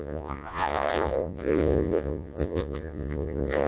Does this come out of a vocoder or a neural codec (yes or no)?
yes